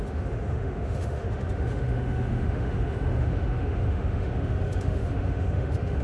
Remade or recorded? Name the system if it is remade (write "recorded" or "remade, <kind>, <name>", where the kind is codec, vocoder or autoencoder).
remade, autoencoder, DAC-VAE